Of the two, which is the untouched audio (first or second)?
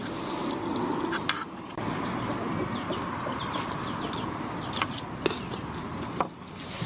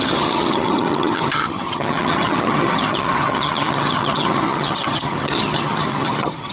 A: first